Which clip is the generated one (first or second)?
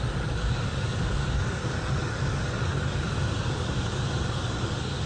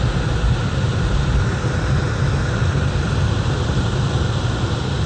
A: first